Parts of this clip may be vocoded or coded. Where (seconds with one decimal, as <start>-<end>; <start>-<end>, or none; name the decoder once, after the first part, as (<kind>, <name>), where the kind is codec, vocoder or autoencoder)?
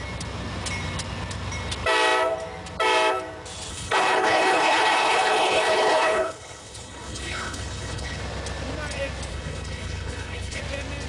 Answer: 3.7-8.2 (codec, HILCodec); 9.3-10.6